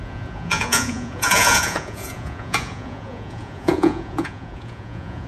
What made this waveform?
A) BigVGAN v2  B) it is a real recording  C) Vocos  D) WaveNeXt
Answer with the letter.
C